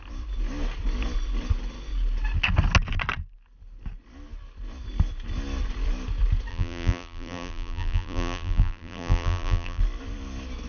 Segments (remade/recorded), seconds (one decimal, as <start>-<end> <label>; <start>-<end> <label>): 0.0-6.5 recorded; 6.5-9.8 remade; 9.8-10.7 recorded